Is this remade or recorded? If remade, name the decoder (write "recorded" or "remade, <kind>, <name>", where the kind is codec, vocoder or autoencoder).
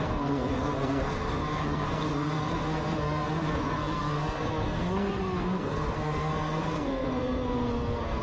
remade, codec, SNAC